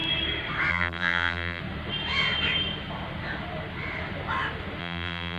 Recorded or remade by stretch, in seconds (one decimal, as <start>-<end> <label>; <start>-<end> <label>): 0.0-0.7 recorded; 0.7-1.6 remade; 1.6-4.8 recorded; 4.8-5.4 remade